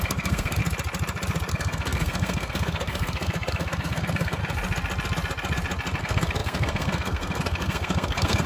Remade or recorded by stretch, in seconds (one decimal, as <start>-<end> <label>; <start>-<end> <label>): 0.0-0.6 remade; 0.6-1.5 recorded; 1.5-4.4 remade; 4.4-6.0 recorded; 6.0-8.5 remade